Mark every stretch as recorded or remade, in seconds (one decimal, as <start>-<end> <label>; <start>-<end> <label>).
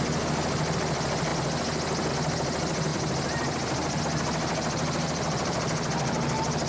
0.0-2.9 recorded; 2.9-4.0 remade; 4.0-6.7 recorded